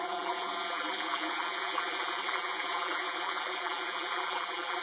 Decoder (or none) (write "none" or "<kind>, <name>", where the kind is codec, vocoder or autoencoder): vocoder, BigVGAN v2